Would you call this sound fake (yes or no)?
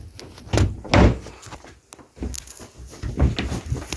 no